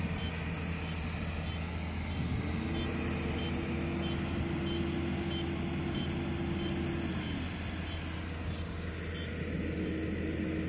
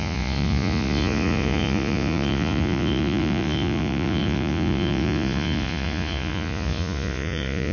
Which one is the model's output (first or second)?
second